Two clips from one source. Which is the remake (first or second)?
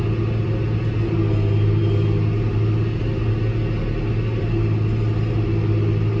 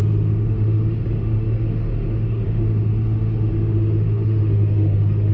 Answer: second